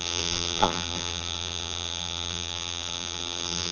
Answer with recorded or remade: remade